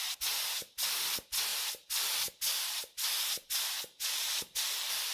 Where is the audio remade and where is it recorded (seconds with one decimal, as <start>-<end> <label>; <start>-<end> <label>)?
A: 0.0-5.1 recorded